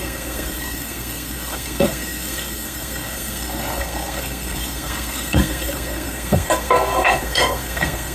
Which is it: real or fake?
fake